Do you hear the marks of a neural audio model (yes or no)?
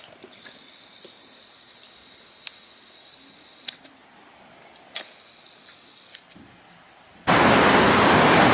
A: no